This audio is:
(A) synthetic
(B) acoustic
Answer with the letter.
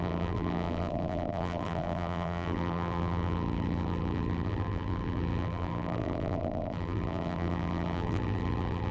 A